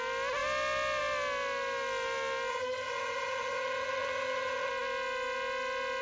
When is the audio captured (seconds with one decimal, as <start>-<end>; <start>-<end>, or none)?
0.0-2.5; 4.7-6.0